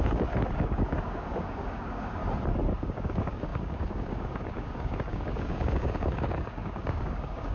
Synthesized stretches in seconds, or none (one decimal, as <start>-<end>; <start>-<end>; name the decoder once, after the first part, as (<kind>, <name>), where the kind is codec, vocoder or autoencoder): 0.0-2.2 (codec, DAC); 2.8-7.5